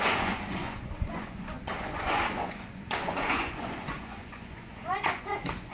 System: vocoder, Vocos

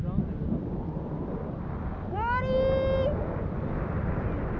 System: none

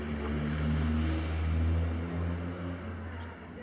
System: none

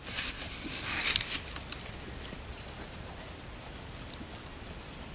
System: none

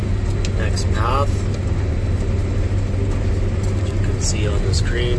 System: none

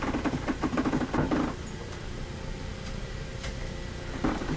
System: none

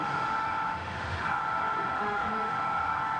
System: autoencoder, DAC-VAE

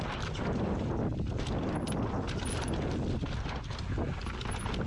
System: none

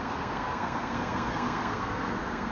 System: codec, SNAC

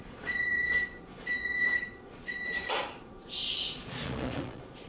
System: vocoder, Vocos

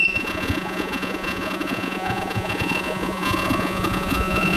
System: vocoder, Vocos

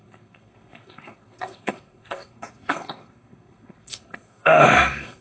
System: codec, SNAC